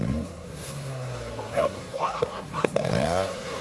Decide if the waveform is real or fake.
fake